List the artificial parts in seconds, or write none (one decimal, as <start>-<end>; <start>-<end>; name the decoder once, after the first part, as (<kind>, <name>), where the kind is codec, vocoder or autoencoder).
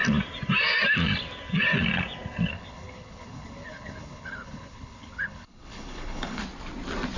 2.5-6.4 (codec, HILCodec)